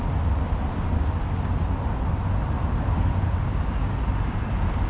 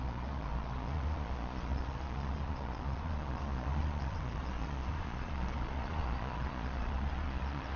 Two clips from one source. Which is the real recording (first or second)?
first